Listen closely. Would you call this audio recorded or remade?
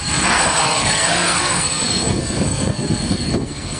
remade